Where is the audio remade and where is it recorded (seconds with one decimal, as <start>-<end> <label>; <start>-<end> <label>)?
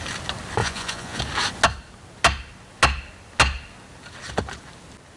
0.0-0.6 recorded; 0.6-1.2 remade; 1.2-5.2 recorded